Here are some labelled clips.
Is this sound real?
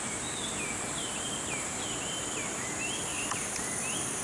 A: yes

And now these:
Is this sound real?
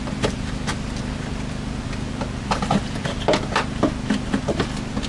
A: yes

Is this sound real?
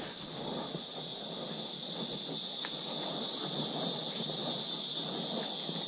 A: yes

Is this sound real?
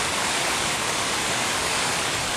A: no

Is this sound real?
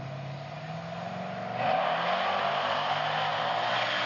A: yes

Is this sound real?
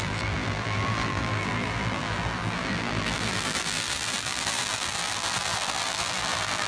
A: no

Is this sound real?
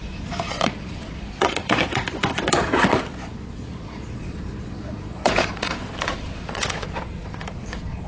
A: no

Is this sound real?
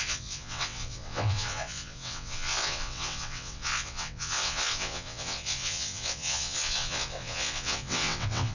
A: no